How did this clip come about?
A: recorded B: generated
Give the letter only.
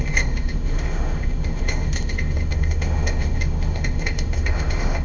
B